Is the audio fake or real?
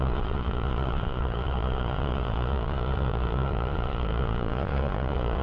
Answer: fake